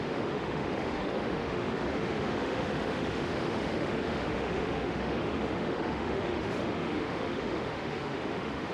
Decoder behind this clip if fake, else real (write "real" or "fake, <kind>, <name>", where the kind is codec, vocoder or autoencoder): fake, autoencoder, DAC-VAE